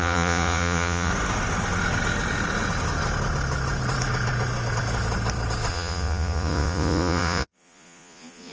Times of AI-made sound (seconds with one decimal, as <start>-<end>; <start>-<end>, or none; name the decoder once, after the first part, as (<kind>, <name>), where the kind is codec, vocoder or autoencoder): 0.0-1.1 (vocoder, Vocos); 5.7-8.5